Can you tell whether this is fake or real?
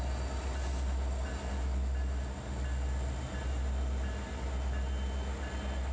real